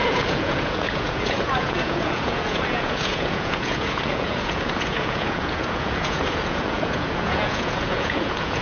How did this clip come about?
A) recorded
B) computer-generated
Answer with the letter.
B